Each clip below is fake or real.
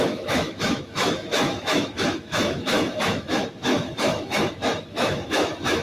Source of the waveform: fake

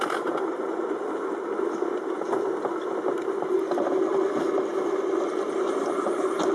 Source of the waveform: real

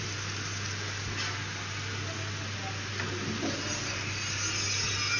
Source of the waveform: real